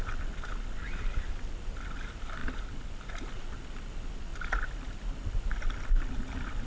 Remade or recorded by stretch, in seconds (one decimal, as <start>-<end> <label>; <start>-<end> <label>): 0.0-2.4 recorded; 2.4-3.1 remade; 3.1-4.3 recorded; 4.3-4.9 remade; 4.9-6.7 recorded